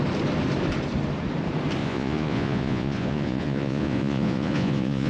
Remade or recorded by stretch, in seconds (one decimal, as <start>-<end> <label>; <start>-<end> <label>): 0.0-1.8 recorded; 1.8-5.1 remade

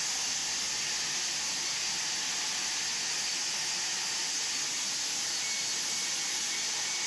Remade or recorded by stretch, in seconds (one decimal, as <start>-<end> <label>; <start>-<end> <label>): 0.0-7.1 recorded

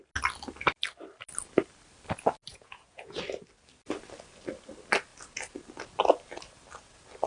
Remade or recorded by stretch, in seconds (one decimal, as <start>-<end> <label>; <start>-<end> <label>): 0.0-2.5 recorded; 2.5-3.2 remade; 3.2-7.3 recorded

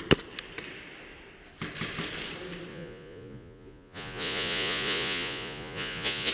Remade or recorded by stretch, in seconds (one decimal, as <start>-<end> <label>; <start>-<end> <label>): 0.0-2.7 recorded; 2.7-6.3 remade

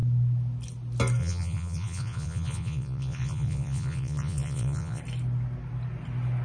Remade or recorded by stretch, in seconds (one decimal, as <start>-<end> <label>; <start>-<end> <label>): 0.0-1.2 recorded; 1.2-5.0 remade; 5.0-6.4 recorded

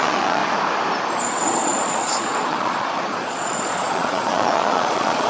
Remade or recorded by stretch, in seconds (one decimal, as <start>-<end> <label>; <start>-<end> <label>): 0.0-0.4 remade; 0.4-1.2 recorded; 1.2-5.3 remade

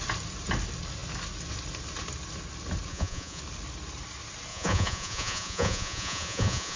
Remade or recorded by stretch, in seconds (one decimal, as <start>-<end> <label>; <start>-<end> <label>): 0.0-2.9 recorded; 2.9-3.4 remade; 3.4-4.5 recorded; 4.5-6.8 remade